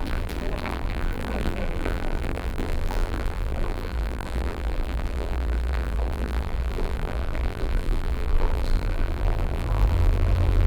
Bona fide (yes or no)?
no